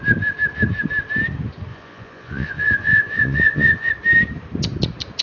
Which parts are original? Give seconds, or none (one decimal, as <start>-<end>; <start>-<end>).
0.0-1.7; 3.9-5.2